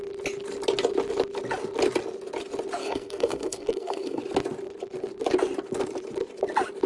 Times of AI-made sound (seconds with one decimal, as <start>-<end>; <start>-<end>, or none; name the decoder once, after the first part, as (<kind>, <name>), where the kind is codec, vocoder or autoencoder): 2.8-4.2 (codec, SNAC)